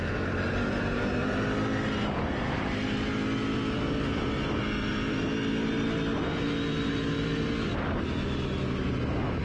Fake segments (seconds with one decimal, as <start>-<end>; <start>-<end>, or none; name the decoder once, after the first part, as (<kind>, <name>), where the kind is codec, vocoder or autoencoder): 0.0-0.7 (autoencoder, DAC-VAE)